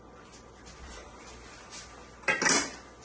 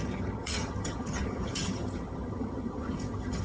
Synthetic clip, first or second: second